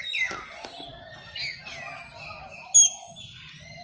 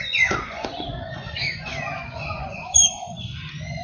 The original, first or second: first